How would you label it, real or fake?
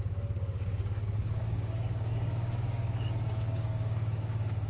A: fake